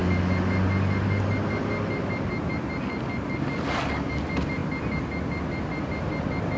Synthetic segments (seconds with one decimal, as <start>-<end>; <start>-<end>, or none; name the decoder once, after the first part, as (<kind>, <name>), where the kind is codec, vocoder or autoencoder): none